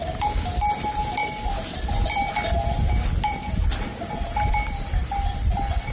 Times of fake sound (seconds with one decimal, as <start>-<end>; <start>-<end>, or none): none

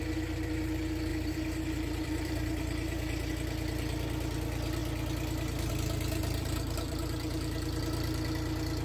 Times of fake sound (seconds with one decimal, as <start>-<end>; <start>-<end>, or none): 1.1-3.3; 6.2-7.8